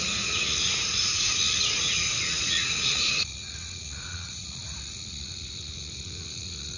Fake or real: fake